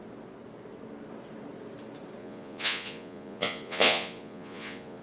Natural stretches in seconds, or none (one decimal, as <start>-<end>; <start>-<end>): 0.0-2.2